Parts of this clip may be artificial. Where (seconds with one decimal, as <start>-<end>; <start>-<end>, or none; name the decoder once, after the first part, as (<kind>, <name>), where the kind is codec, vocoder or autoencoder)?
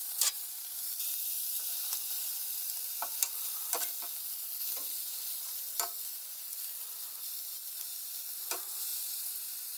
0.0-3.2 (vocoder, BigVGAN v2); 8.3-9.8